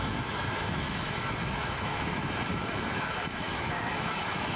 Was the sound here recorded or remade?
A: remade